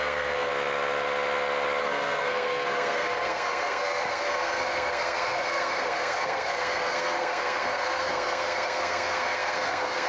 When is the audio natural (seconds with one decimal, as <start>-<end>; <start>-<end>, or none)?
0.5-1.8